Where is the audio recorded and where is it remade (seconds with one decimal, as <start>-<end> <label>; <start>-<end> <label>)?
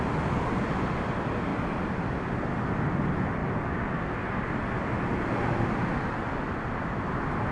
0.0-7.5 recorded